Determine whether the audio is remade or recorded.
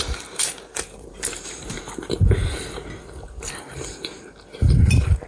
remade